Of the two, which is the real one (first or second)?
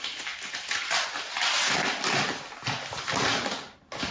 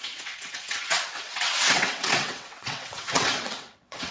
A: first